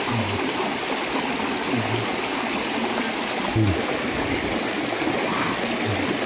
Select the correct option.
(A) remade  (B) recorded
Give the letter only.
B